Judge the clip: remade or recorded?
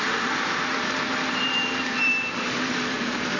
remade